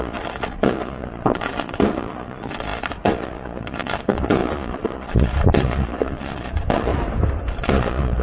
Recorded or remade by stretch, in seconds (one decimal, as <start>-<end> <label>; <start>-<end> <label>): 0.0-6.9 remade; 6.9-7.5 recorded; 7.5-8.2 remade